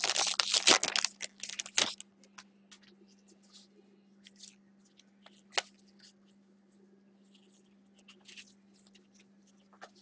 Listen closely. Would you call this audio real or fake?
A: real